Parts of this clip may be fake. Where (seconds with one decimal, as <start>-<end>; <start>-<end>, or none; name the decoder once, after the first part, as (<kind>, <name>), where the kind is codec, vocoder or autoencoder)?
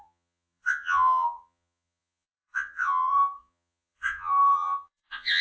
0.0-5.4 (vocoder, Vocos)